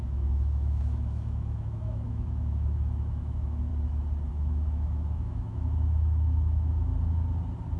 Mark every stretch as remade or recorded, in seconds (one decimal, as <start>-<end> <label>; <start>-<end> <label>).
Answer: 0.0-3.7 remade; 3.7-4.3 recorded; 4.3-6.9 remade; 6.9-7.8 recorded

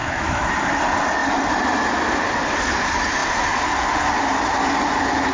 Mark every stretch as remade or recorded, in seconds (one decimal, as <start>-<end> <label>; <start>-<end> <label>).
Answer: 0.0-0.5 remade; 0.5-5.3 recorded

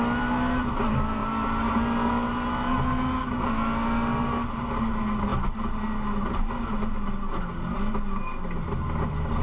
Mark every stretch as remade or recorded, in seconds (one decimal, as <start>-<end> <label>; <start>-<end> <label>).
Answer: 0.0-9.4 recorded

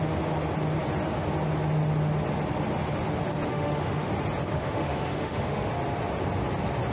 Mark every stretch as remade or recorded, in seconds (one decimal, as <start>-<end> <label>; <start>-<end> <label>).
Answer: 0.0-3.5 recorded; 3.5-4.1 remade; 4.1-4.5 recorded; 4.5-5.7 remade; 5.7-6.9 recorded

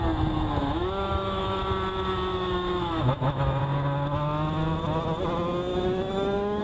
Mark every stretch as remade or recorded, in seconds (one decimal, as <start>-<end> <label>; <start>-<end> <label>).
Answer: 0.0-0.6 recorded; 0.6-1.4 remade; 1.4-2.3 recorded; 2.3-3.6 remade; 3.6-5.7 recorded; 5.7-6.6 remade